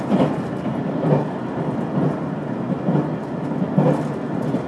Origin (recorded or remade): recorded